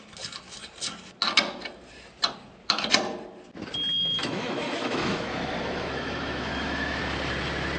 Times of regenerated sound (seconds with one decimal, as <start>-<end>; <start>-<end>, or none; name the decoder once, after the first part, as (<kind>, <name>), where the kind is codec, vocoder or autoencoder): 3.9-7.0 (autoencoder, DAC-VAE)